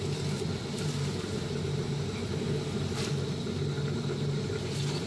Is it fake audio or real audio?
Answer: real